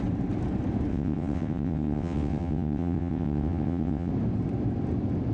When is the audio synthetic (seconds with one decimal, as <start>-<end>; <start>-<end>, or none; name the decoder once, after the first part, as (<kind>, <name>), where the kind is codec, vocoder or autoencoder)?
0.9-4.1 (vocoder, WaveNeXt)